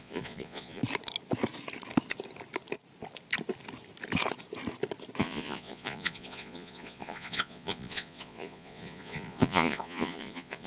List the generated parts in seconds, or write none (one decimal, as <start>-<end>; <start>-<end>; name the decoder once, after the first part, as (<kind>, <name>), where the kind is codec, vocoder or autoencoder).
0.0-0.8 (vocoder, Vocos); 5.2-10.7